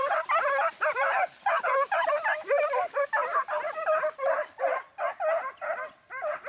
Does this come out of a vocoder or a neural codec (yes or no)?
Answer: no